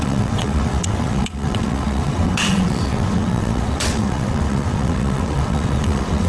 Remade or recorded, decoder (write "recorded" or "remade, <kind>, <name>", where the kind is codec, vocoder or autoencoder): remade, vocoder, WaveNeXt